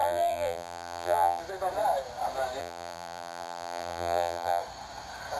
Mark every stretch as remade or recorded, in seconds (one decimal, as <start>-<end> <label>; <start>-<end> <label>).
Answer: 0.0-1.4 remade; 1.4-2.6 recorded; 2.6-4.6 remade; 4.6-5.4 recorded